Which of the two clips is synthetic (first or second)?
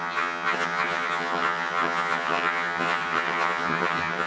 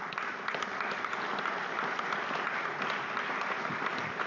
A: first